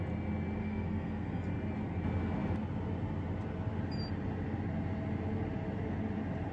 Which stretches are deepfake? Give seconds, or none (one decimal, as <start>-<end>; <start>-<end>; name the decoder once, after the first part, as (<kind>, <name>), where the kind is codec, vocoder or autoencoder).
0.6-1.5 (codec, SNAC)